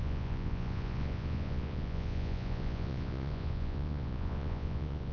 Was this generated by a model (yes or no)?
yes